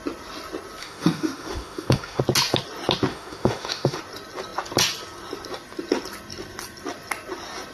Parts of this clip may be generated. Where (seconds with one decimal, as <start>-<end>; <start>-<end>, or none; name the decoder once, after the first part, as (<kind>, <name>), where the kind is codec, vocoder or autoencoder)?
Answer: 0.8-2.2 (autoencoder, DAC-VAE); 3.1-4.0